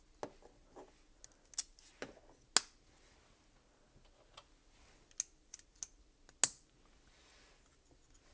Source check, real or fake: real